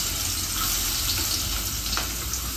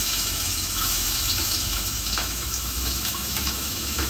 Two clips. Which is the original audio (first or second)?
first